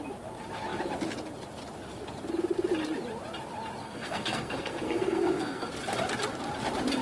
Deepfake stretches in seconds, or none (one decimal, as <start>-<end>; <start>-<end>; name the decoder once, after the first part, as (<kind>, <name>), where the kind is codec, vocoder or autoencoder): 3.8-5.7 (codec, SNAC)